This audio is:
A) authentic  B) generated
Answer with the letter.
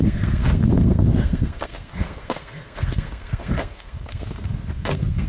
B